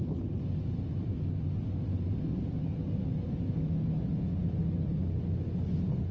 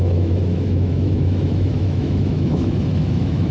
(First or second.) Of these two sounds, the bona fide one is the first